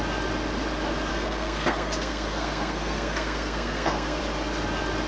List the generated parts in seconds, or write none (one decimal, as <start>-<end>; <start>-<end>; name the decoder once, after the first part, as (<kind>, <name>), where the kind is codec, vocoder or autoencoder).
1.1-4.2 (codec, SNAC)

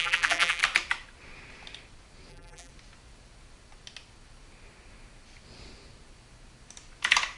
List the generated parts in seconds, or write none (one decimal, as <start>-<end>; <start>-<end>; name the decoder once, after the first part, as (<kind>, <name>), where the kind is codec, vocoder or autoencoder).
0.0-0.6 (vocoder, BigVGAN v2); 2.3-2.7

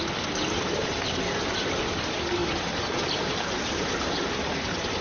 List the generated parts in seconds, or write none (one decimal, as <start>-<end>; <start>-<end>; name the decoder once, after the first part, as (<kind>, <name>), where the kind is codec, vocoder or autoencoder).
none